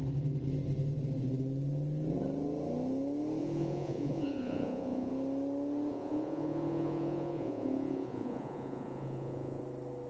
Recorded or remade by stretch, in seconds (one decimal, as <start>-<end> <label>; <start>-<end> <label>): 0.0-3.4 recorded; 3.4-5.1 remade; 5.1-5.9 recorded; 5.9-9.6 remade; 9.6-10.1 recorded